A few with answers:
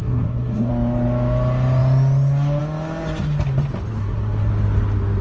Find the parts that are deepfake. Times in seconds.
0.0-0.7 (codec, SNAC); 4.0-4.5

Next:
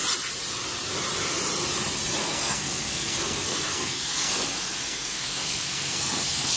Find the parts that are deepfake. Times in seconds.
2.2-6.6 (codec, SNAC)

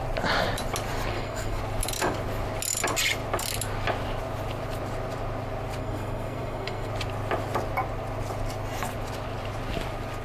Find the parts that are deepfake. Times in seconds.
1.1-1.6 (codec, SNAC); 5.8-6.9

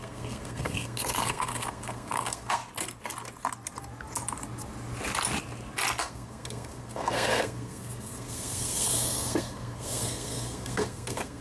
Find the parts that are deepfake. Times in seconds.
0.0-2.6 (codec, SNAC); 6.0-11.4

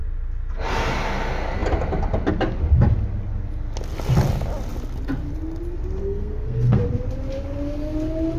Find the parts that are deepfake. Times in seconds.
6.0-6.8 (codec, SNAC)

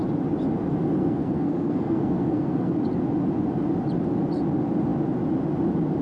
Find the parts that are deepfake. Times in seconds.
1.0-2.7 (codec, SNAC)